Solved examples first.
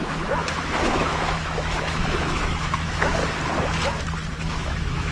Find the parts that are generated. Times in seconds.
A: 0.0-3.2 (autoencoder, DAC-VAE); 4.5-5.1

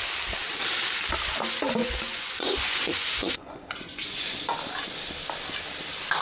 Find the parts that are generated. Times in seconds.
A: 1.8-4.4 (vocoder, Vocos)

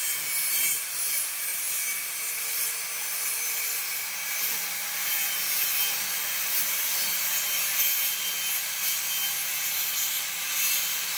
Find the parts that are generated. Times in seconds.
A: none

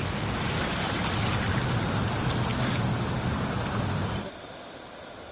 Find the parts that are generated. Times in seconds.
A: none

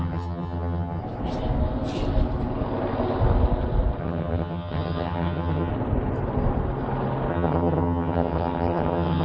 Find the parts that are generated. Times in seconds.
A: 0.0-1.0 (vocoder, HiFi-GAN); 4.0-5.7; 7.3-9.2

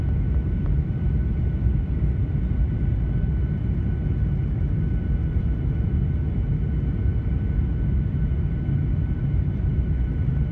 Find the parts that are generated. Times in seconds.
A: 5.2-5.9 (vocoder, BigVGAN v2)

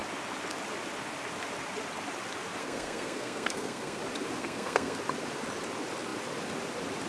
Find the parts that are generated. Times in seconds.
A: 2.6-4.0 (codec, SNAC); 4.4-5.0